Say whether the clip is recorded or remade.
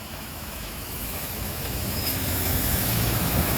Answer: remade